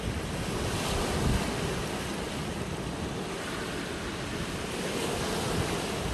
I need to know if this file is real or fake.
real